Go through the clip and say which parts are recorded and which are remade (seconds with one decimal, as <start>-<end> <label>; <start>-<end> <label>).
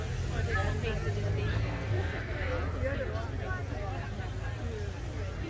0.0-1.5 recorded; 1.5-2.5 remade; 2.5-5.5 recorded